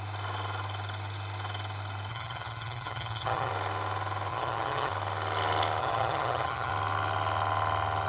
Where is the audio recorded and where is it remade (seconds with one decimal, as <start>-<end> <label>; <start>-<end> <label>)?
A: 0.0-2.1 recorded; 2.1-3.5 remade; 3.5-4.3 recorded; 4.3-4.9 remade; 4.9-5.8 recorded; 5.8-6.7 remade; 6.7-8.1 recorded